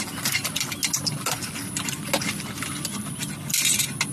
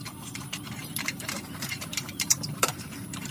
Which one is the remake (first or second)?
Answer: second